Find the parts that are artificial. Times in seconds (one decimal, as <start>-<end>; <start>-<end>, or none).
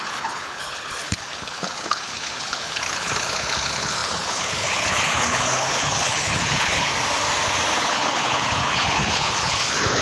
0.0-6.9; 7.8-10.0